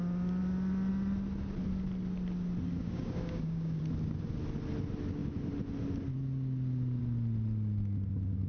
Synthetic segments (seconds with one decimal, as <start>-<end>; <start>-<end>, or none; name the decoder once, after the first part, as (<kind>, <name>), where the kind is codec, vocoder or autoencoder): 2.8-3.8 (codec, DAC)